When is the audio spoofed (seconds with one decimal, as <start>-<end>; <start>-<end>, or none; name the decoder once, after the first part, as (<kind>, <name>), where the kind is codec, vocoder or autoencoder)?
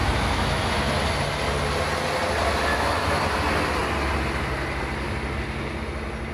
0.0-0.6 (autoencoder, DAC-VAE); 2.7-3.2